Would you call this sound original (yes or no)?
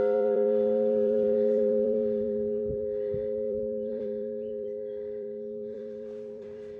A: no